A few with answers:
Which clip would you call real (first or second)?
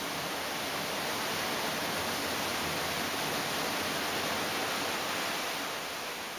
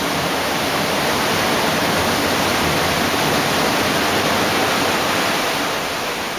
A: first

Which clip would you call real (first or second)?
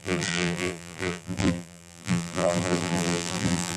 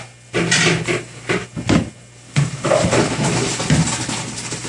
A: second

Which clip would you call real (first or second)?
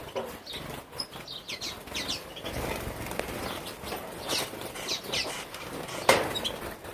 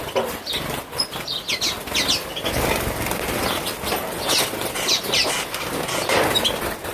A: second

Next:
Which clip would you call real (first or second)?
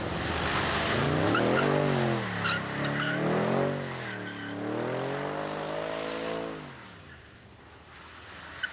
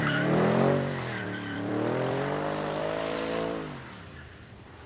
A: first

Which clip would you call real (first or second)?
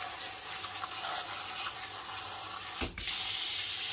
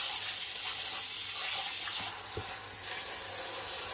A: second